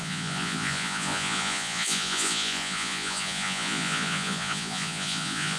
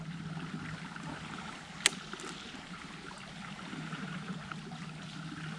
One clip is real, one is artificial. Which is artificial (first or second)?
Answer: first